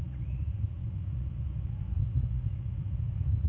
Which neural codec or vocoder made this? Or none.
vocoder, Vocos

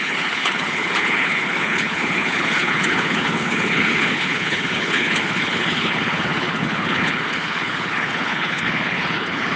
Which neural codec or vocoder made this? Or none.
codec, HILCodec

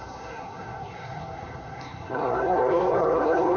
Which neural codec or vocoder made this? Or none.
codec, SNAC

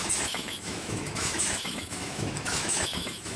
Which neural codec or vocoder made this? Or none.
autoencoder, DAC-VAE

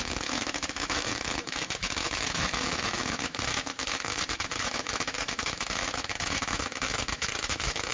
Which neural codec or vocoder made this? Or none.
autoencoder, DAC-VAE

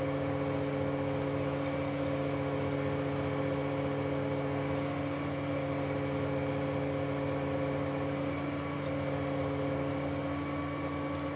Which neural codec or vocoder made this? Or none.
none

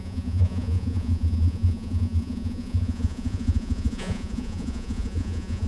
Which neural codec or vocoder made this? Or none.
vocoder, Vocos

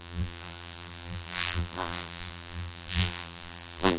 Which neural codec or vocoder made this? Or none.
vocoder, BigVGAN v2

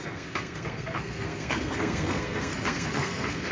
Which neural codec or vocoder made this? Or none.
codec, SNAC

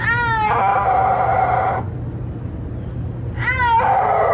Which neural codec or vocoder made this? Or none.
none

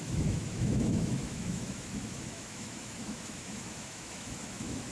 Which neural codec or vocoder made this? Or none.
autoencoder, DAC-VAE